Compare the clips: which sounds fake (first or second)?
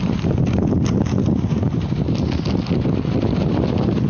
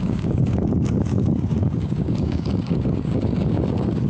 second